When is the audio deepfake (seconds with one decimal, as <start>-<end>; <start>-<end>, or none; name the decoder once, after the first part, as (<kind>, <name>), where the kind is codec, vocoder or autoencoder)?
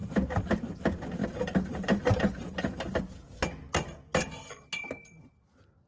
1.2-2.1 (vocoder, BigVGAN v2)